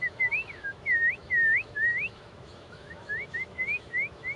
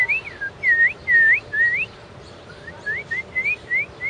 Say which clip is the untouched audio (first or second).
second